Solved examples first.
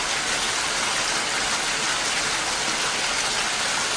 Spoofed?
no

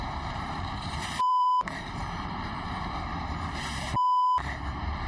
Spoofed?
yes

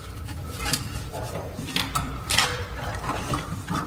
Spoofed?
yes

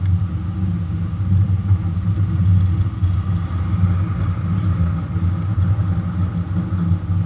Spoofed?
no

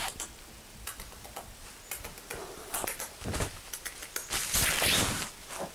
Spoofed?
no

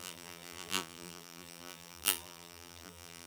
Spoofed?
yes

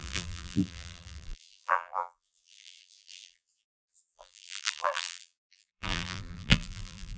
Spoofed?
yes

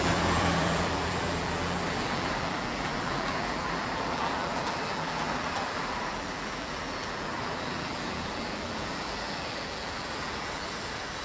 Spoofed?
yes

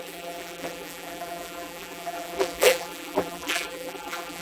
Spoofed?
yes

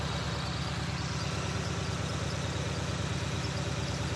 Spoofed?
no